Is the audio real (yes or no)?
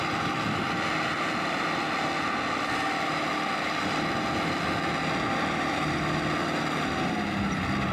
yes